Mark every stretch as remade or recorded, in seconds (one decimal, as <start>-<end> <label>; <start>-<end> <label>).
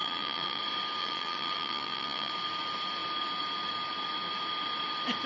0.0-0.6 remade; 0.6-1.0 recorded; 1.0-2.3 remade; 2.3-5.3 recorded